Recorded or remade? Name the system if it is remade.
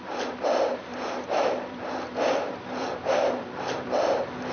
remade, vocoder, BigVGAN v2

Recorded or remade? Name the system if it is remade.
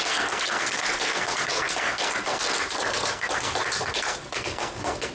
remade, codec, SNAC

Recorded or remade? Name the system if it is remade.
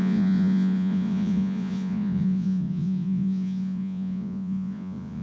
remade, vocoder, Vocos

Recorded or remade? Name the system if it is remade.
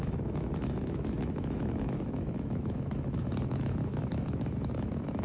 remade, autoencoder, DAC-VAE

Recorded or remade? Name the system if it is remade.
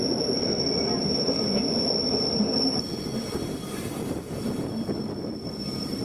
recorded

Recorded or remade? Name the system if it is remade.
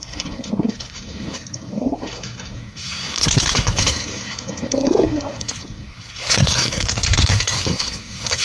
remade, codec, SNAC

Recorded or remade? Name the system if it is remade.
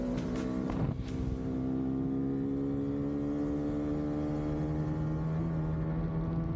recorded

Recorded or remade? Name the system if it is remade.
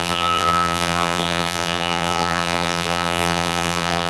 remade, vocoder, BigVGAN v2